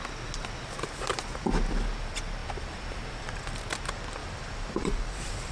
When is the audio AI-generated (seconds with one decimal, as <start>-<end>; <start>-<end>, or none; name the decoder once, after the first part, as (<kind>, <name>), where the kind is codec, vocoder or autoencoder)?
2.4-3.4 (vocoder, BigVGAN v2); 4.2-5.5